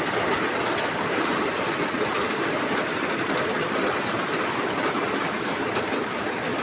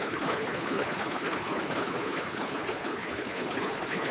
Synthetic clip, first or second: second